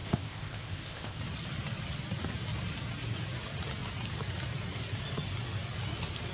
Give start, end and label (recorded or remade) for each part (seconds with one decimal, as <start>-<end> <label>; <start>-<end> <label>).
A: 0.0-1.2 remade; 1.2-6.3 recorded